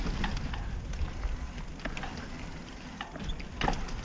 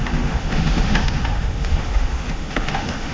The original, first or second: first